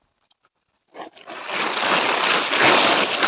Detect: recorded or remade recorded